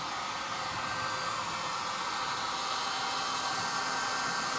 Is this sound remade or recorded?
recorded